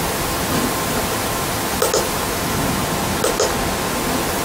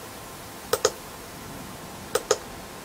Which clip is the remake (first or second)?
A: second